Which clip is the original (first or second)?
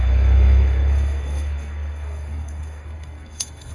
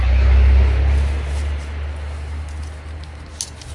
second